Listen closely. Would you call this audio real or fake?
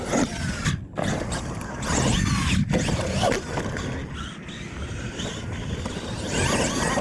real